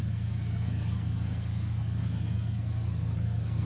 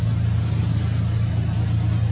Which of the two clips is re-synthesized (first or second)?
first